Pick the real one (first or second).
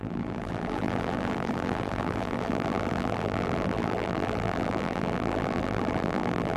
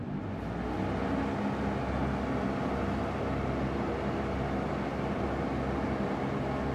second